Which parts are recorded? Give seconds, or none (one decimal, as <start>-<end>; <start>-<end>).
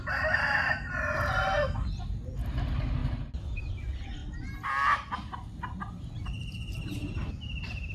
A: 0.0-7.9